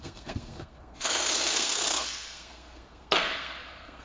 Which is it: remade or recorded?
remade